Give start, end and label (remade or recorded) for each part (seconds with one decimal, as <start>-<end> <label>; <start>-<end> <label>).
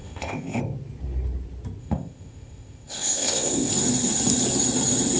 0.0-0.6 remade; 0.6-1.8 recorded; 1.8-3.7 remade; 3.7-5.2 recorded